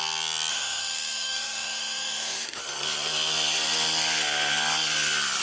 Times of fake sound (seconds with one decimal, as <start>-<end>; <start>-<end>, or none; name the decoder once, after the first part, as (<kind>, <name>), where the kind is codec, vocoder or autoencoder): 0.5-2.6 (autoencoder, DAC-VAE)